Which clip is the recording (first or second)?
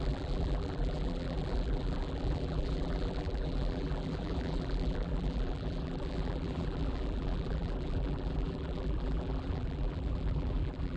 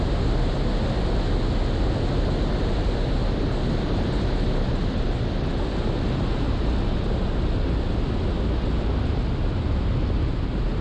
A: second